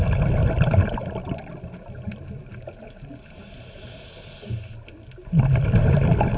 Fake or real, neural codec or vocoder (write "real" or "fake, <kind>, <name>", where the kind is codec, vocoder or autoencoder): real